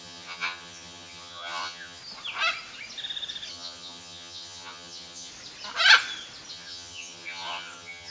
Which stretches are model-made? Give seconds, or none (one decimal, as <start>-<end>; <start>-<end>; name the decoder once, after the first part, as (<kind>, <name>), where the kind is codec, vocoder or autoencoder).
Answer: 0.0-2.0 (vocoder, HiFi-GAN); 3.5-5.3; 6.5-8.1